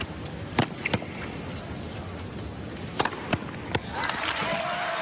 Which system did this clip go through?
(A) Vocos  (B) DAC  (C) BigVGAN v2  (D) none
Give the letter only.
D